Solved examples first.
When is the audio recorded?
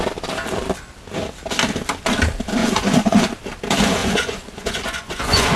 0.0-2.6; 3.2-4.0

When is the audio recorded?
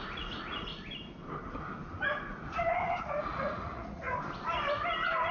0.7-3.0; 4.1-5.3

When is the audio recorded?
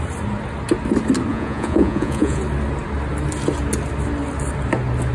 0.0-1.3; 2.4-5.1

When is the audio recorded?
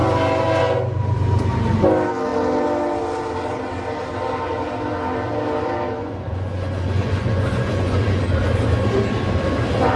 0.0-6.0; 8.2-10.0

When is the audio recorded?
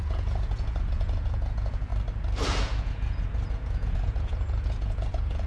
1.9-2.6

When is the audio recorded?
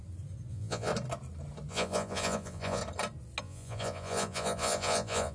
0.0-0.5; 0.9-1.7; 2.8-3.4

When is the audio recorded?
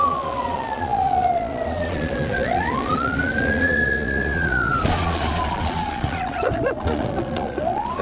none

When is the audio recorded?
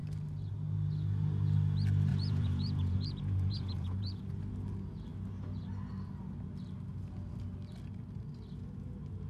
0.0-2.1; 4.2-9.3